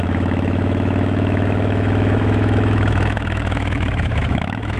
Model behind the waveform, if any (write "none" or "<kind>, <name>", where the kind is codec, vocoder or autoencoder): autoencoder, DAC-VAE